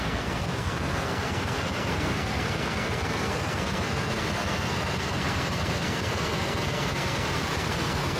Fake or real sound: fake